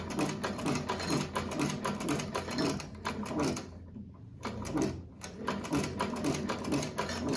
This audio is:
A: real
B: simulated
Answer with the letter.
A